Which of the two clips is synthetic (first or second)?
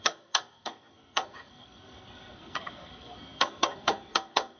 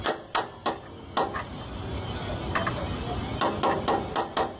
first